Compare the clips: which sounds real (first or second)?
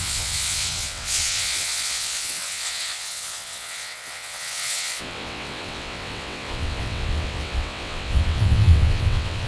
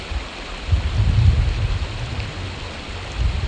second